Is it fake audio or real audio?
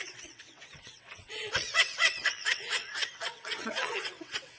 fake